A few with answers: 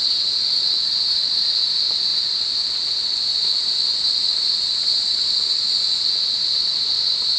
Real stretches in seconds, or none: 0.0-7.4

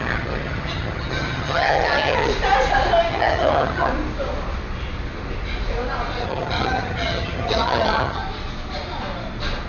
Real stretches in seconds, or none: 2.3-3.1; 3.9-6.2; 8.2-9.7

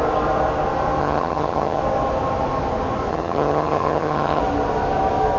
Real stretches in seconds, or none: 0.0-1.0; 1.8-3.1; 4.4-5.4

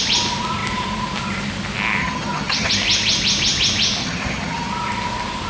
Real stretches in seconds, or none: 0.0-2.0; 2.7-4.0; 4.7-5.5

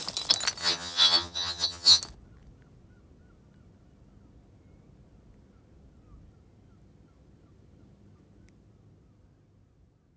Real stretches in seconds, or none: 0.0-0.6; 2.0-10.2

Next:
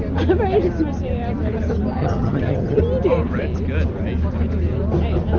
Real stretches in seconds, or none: 0.0-2.0; 2.8-5.4